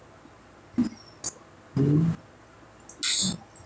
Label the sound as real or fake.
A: real